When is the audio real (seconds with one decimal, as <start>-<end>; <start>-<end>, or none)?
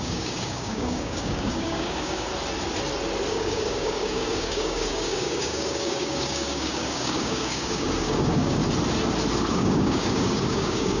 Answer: 2.3-3.3; 8.6-9.5